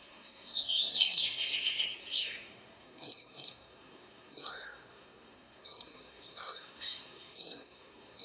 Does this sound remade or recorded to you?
remade